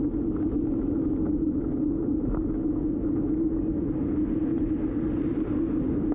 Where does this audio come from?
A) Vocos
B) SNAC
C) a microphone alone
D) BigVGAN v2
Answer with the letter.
C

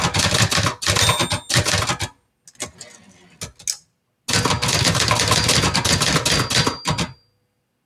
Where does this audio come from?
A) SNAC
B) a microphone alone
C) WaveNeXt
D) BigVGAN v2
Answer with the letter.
B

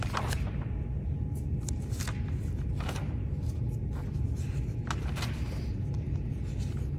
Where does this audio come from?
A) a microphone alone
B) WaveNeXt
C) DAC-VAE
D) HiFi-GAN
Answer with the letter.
A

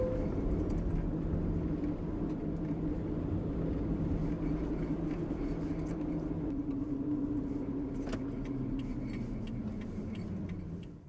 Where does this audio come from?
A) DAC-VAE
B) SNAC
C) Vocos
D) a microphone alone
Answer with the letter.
D